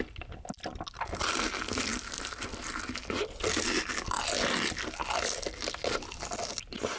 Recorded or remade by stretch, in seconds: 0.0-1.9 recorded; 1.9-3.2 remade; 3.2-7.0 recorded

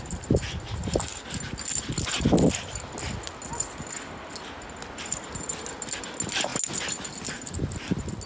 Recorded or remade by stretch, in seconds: 0.0-8.3 recorded

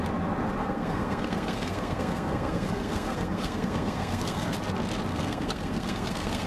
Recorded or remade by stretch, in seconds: 0.0-0.6 recorded; 0.6-4.5 remade; 4.5-5.1 recorded; 5.1-6.5 remade